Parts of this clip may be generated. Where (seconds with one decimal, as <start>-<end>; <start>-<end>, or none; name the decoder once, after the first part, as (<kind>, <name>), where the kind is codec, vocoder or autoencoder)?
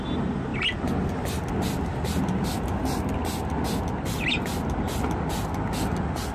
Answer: none